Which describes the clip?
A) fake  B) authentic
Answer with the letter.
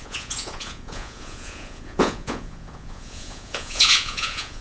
A